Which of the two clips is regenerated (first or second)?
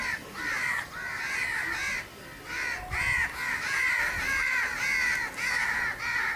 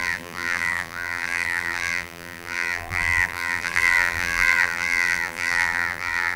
second